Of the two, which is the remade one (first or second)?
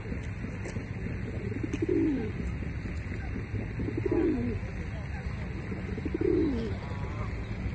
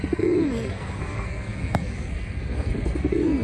second